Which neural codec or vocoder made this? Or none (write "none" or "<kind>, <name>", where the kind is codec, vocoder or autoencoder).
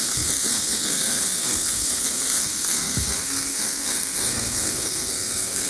codec, SNAC